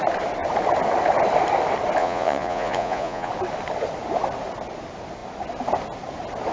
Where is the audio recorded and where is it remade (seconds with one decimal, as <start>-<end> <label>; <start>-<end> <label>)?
0.0-2.0 recorded; 2.0-3.3 remade; 3.3-6.5 recorded